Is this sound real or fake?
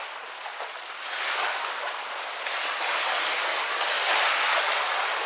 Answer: fake